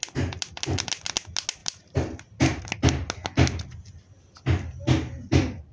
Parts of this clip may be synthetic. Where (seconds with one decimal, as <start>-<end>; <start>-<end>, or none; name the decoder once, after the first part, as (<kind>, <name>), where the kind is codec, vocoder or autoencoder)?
none